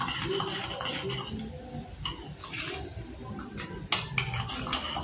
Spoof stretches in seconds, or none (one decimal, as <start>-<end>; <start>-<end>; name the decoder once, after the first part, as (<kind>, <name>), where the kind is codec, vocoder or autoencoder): none